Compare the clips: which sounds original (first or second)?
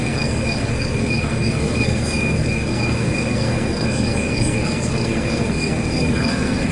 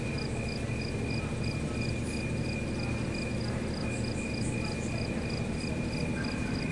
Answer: second